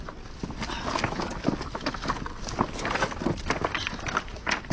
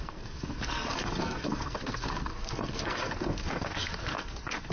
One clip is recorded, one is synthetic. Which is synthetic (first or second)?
second